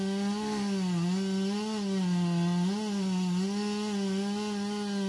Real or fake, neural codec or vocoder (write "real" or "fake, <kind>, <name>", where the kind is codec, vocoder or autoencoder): real